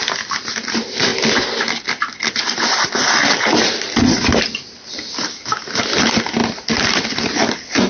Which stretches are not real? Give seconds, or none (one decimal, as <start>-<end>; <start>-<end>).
none